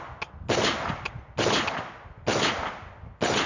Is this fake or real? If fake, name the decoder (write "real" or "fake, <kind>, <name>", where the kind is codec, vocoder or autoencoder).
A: real